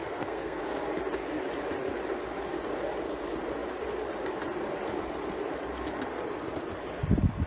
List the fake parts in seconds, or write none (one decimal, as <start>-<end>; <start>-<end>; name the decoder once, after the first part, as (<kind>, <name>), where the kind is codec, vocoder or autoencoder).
0.0-0.6 (codec, SNAC)